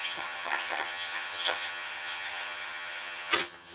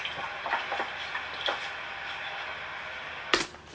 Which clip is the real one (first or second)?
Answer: second